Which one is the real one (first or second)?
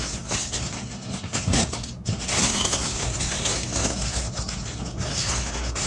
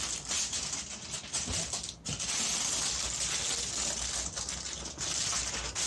second